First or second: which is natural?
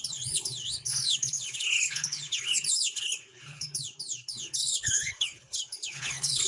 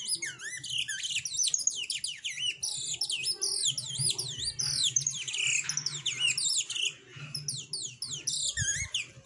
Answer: second